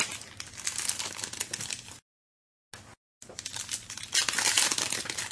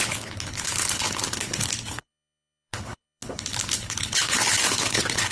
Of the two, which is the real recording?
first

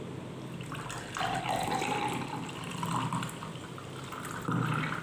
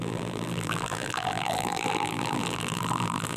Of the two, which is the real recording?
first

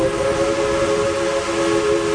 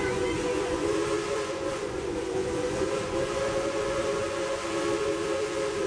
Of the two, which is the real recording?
first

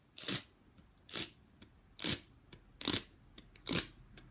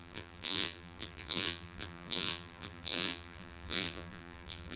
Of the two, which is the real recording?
first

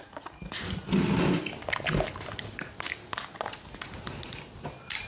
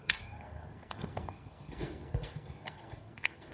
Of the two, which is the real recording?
first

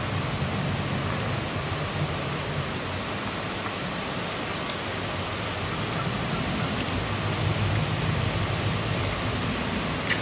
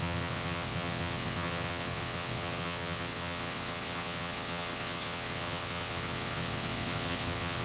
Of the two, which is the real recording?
first